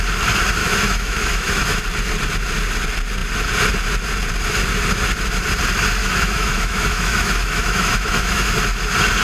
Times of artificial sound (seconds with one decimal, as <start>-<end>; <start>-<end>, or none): 0.6-1.8; 6.0-8.5

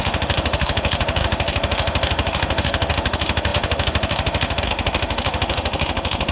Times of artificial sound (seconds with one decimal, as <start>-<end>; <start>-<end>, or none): 0.0-6.3

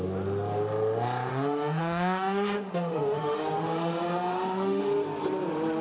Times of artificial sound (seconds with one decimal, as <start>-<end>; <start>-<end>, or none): 1.3-4.8

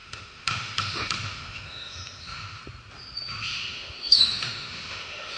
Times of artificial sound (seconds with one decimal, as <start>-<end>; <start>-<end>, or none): 0.0-2.6; 3.4-5.4

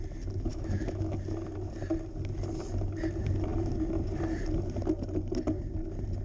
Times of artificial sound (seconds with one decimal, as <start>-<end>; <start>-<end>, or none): 0.5-1.1

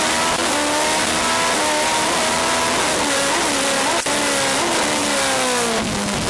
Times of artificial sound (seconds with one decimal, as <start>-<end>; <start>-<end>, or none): none

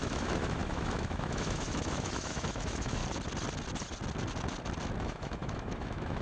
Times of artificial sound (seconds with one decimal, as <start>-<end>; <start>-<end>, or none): 0.0-3.0; 5.0-6.2